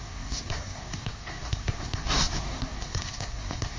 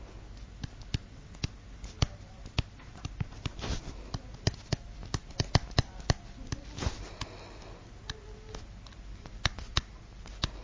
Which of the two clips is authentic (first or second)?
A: second